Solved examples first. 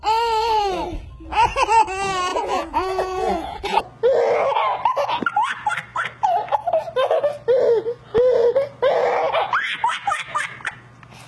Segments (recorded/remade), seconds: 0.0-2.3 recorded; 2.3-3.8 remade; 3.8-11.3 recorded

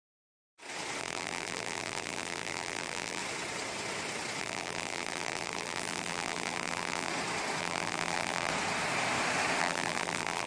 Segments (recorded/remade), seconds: 0.0-0.4 remade; 0.4-1.0 recorded; 1.0-3.2 remade; 3.2-4.4 recorded; 4.4-7.1 remade; 7.1-7.6 recorded; 7.6-8.5 remade; 8.5-9.6 recorded; 9.6-10.5 remade

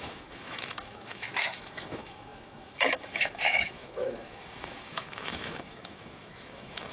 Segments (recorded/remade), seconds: 0.0-6.9 remade

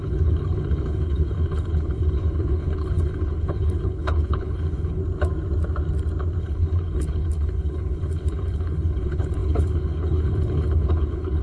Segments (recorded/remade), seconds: 0.0-5.0 remade; 5.0-6.4 recorded; 6.4-11.4 remade

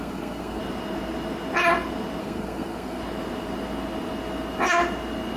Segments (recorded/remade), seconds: 0.0-0.6 remade; 0.6-2.2 recorded; 2.2-3.0 remade; 3.0-5.4 recorded

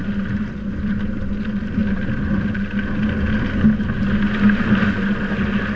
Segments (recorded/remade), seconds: 0.0-5.8 recorded

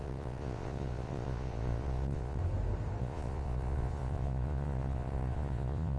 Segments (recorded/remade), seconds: 0.0-2.4 remade; 2.4-3.0 recorded; 3.0-6.0 remade

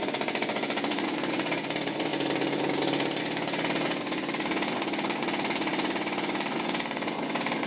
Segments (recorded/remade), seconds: 0.0-2.1 remade; 2.1-3.2 recorded; 3.2-7.7 remade